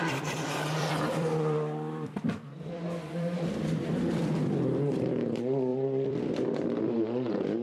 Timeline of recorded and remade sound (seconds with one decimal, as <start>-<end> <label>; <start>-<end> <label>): 0.0-7.6 remade